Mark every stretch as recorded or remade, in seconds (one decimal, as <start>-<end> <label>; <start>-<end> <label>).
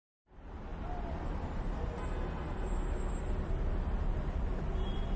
0.0-5.2 recorded